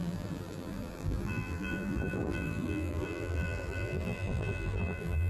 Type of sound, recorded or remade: remade